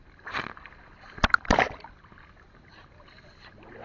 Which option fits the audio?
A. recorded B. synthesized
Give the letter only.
A